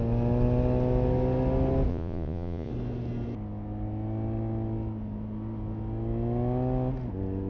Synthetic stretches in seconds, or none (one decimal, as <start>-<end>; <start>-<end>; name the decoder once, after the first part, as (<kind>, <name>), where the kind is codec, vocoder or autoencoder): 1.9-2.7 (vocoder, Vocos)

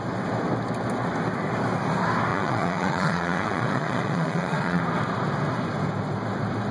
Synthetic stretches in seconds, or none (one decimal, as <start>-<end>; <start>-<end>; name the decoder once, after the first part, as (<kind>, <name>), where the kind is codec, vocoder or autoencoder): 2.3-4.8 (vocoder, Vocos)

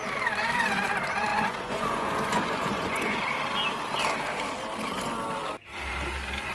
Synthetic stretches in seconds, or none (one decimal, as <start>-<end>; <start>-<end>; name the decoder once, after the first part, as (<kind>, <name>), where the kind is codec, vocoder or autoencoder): 1.3-3.2 (vocoder, Vocos)